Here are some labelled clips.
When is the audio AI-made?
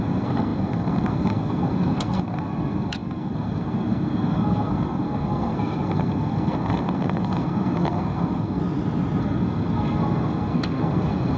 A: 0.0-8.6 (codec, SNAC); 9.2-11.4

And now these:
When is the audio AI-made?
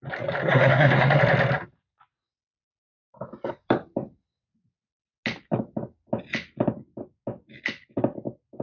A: 0.4-1.2 (codec, SNAC)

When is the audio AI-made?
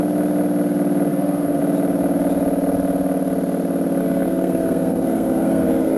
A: 1.1-1.6 (codec, SNAC); 4.0-6.0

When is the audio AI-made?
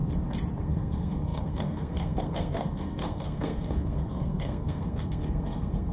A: 0.6-5.9 (codec, SNAC)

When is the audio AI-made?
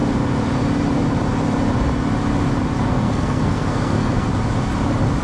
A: 2.8-4.3 (codec, SNAC)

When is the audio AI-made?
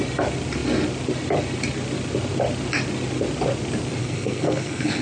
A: 4.0-5.0 (codec, SNAC)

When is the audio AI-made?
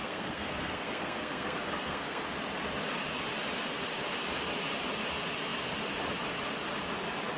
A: 0.0-2.2 (codec, SNAC)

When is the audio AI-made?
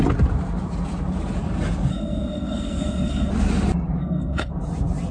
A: 1.9-3.3 (codec, SNAC); 4.0-4.5